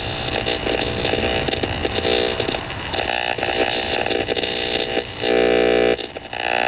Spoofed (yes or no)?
no